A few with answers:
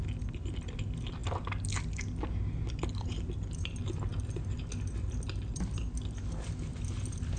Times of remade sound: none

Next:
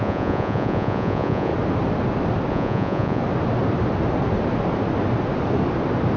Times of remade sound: 0.0-1.5 (vocoder, Vocos); 2.5-3.2

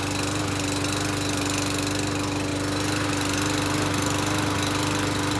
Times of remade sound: none

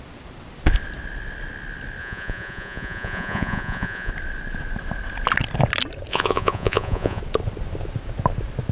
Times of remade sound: 2.0-4.1 (vocoder, Vocos); 6.1-7.2

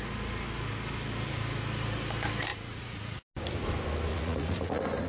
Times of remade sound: 2.5-3.2 (vocoder, Vocos); 4.1-5.1